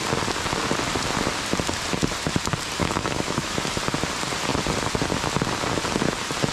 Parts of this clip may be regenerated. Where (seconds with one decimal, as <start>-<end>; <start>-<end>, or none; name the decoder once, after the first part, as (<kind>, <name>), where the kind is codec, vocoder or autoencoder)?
2.8-3.6 (autoencoder, DAC-VAE)